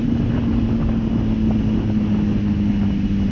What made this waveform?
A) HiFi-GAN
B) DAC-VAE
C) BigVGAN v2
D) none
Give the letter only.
D